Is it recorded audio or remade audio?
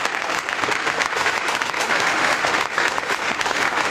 remade